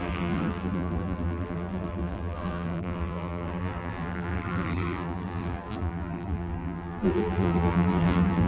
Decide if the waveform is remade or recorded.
remade